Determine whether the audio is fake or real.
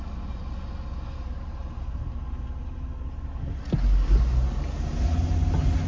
real